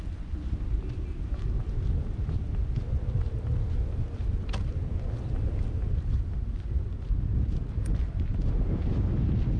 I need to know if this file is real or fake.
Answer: real